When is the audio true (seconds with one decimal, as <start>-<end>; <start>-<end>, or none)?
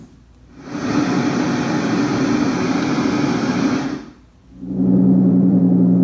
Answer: 0.0-4.5; 5.6-6.0